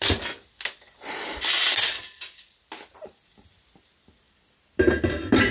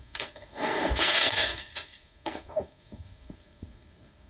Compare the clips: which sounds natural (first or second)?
first